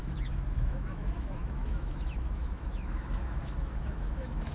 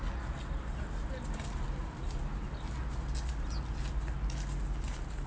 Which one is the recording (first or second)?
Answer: second